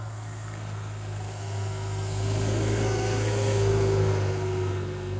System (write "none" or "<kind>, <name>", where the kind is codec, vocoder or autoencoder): codec, SNAC